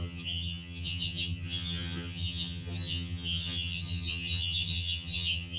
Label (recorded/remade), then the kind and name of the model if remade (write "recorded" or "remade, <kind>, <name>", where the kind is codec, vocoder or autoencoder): remade, vocoder, HiFi-GAN